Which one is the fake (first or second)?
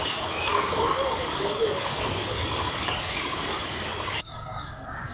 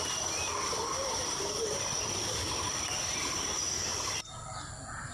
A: first